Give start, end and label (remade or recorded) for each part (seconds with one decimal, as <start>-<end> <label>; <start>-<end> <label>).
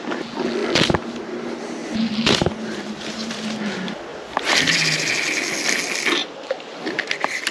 0.0-1.8 recorded; 1.8-3.3 remade; 3.3-6.2 recorded; 6.2-7.1 remade; 7.1-7.5 recorded